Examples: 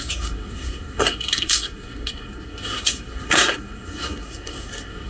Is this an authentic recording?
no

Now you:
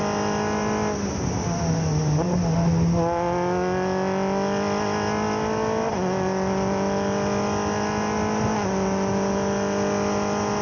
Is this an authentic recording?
yes